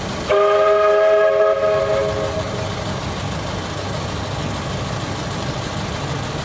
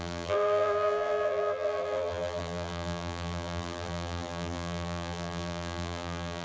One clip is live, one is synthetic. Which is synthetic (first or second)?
second